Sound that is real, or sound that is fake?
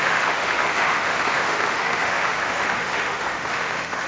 fake